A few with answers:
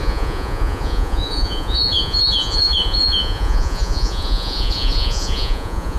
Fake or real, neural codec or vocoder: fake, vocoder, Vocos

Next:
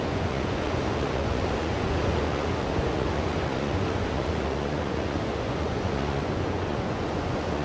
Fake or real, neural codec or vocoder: fake, vocoder, Vocos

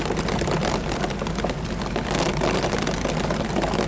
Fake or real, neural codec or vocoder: real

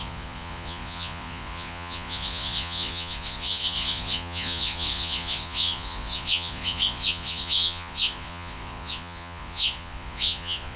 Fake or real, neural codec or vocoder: fake, vocoder, Vocos